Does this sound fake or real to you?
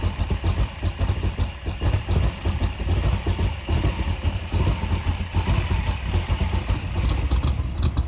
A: real